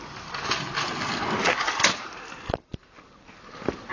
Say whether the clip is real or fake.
real